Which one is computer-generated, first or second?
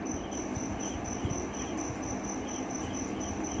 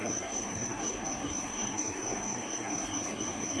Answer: second